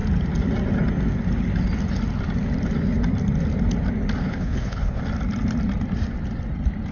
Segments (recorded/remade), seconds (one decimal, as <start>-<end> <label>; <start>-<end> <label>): 0.0-4.2 recorded; 4.2-5.0 remade; 5.0-6.9 recorded